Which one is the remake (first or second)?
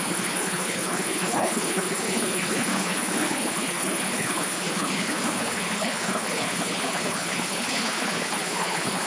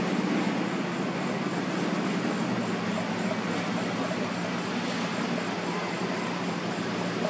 first